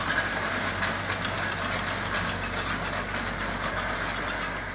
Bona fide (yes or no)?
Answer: yes